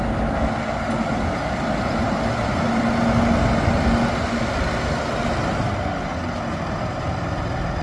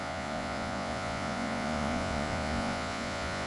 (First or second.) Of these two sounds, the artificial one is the second